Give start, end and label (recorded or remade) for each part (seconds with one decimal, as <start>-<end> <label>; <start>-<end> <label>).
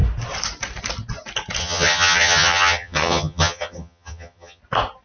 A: 0.0-1.6 recorded; 1.6-4.6 remade; 4.6-5.0 recorded